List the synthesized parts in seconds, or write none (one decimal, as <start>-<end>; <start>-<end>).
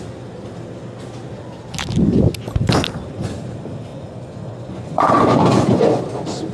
3.9-6.0